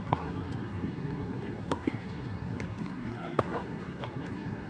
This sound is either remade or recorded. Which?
remade